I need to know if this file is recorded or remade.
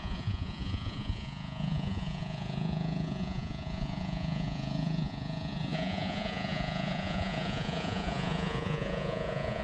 remade